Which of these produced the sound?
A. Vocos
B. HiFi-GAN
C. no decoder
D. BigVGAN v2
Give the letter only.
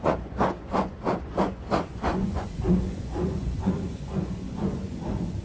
A